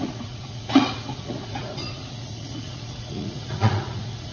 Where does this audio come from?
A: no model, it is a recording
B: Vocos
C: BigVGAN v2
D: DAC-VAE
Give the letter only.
B